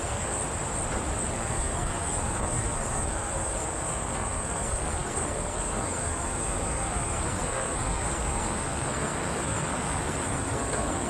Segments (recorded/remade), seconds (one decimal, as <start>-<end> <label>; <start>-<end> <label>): 0.0-0.4 remade; 0.4-1.3 recorded; 1.3-11.1 remade